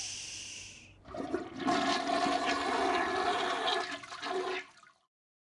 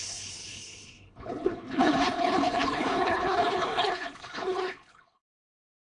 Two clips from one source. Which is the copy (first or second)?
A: second